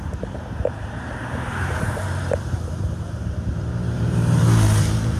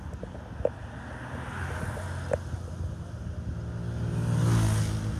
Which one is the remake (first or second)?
first